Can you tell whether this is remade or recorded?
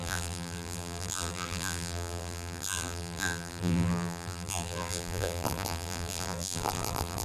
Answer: remade